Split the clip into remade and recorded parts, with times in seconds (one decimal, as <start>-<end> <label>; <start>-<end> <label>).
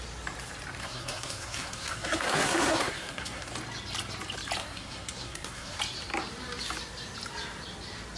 0.0-0.8 recorded; 0.8-3.5 remade; 3.5-4.6 recorded; 4.6-5.8 remade; 5.8-8.2 recorded